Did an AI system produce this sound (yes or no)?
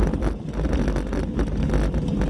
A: no